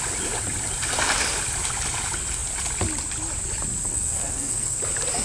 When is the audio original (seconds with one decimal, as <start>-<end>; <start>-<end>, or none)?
0.0-3.9; 4.8-5.2